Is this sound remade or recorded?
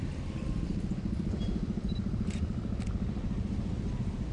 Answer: recorded